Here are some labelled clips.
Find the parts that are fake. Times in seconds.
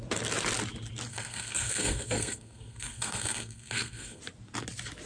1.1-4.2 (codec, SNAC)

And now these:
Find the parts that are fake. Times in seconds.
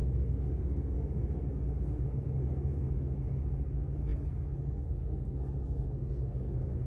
0.0-6.9 (codec, SNAC)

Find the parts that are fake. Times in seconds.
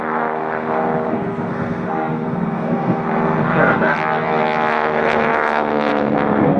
0.0-4.0 (codec, SNAC); 4.7-6.6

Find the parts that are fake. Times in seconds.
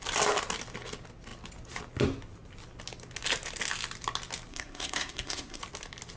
4.5-5.6 (codec, SNAC)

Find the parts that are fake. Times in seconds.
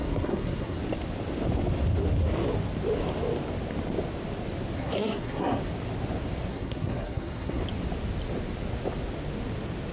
0.0-0.8 (codec, SNAC); 4.8-5.6; 6.5-7.6